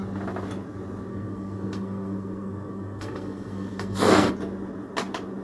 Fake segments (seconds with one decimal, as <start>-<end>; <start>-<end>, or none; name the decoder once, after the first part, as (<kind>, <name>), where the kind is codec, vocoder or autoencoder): 1.1-4.3 (codec, SNAC)